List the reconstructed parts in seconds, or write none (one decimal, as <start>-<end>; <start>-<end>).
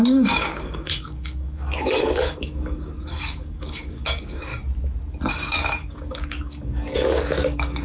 0.0-4.5; 5.3-7.8